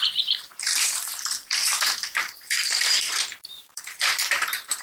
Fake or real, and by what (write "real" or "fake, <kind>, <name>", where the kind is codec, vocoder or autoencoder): fake, vocoder, BigVGAN v2